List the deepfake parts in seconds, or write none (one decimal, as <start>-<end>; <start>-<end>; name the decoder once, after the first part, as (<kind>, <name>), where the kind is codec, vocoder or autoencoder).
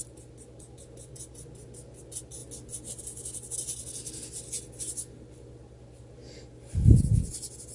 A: none